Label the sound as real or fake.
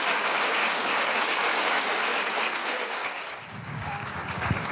fake